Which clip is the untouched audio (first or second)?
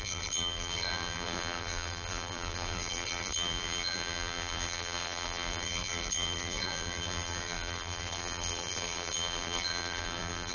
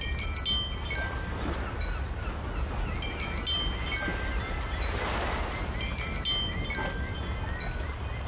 second